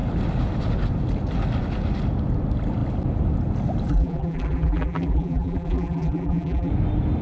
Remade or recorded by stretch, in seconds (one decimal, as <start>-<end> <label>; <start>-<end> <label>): 0.0-3.9 recorded; 3.9-6.7 remade; 6.7-7.2 recorded